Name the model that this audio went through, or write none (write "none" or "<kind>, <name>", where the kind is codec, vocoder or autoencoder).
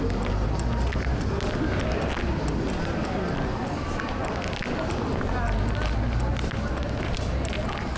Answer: none